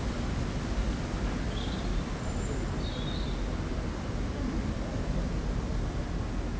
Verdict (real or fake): real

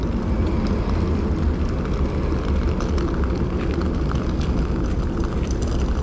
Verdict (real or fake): real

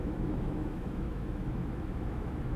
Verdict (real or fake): fake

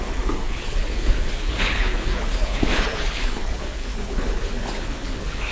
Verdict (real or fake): fake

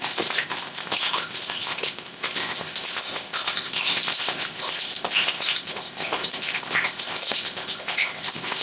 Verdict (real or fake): fake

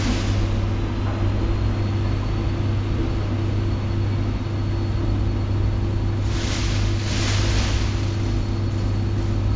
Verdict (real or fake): real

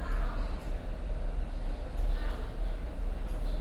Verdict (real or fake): real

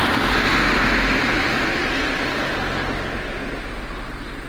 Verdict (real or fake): real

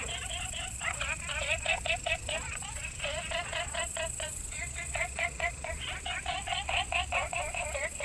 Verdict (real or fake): fake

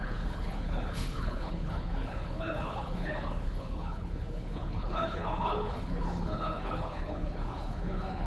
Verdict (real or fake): fake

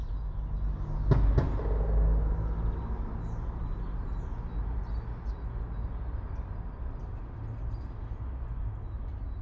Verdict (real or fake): real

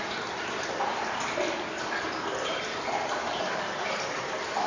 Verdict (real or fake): real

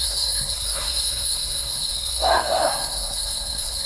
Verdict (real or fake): fake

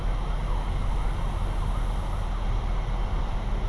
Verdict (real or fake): real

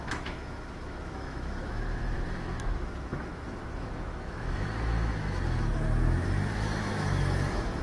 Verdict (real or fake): fake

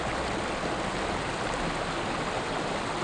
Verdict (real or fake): real